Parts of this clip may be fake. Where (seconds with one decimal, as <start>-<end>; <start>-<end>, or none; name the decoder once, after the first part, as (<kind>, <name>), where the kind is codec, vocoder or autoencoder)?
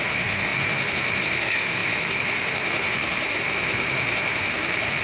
0.0-5.0 (autoencoder, DAC-VAE)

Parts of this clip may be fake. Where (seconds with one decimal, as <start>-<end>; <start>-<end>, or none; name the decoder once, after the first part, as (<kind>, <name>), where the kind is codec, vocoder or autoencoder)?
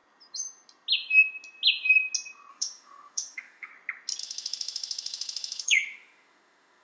2.5-3.7 (autoencoder, DAC-VAE); 4.2-6.8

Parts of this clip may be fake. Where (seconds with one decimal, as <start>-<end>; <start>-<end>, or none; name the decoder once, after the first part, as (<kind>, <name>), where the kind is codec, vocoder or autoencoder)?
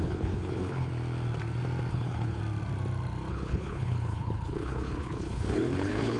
0.0-0.9 (codec, HILCodec); 1.9-2.4; 3.3-6.2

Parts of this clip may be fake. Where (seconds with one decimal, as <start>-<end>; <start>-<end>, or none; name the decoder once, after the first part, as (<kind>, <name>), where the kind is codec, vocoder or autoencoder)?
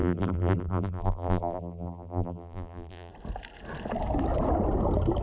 0.0-3.1 (vocoder, BigVGAN v2)